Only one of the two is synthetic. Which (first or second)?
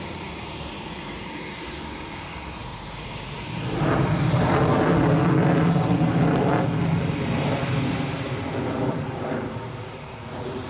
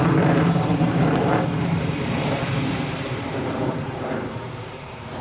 second